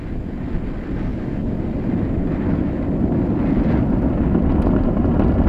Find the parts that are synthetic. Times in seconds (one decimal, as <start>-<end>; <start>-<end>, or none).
none